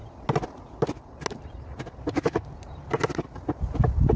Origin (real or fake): real